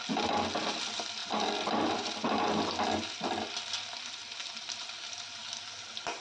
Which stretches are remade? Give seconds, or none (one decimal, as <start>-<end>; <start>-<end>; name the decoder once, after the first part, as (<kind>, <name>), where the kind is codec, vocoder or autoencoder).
none